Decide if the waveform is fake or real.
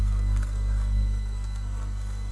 fake